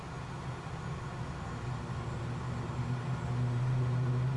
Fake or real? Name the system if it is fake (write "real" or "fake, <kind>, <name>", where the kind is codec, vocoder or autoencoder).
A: real